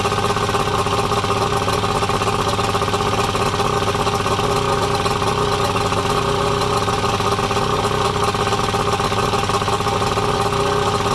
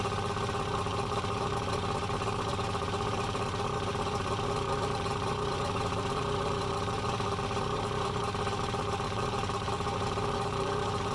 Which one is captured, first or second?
first